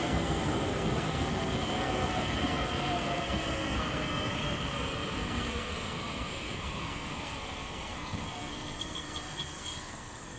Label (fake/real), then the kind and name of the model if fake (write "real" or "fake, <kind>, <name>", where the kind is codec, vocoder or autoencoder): fake, codec, SNAC